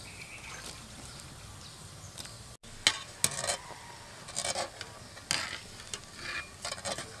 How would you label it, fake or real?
real